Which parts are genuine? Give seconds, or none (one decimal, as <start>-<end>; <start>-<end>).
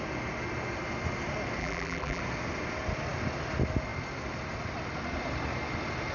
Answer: 0.0-1.6; 2.2-6.1